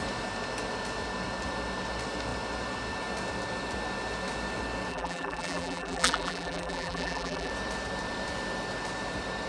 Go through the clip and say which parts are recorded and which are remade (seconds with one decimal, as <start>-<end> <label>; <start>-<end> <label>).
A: 0.0-4.9 recorded; 4.9-7.5 remade; 7.5-9.5 recorded